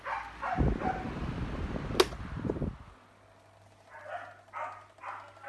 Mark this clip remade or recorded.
recorded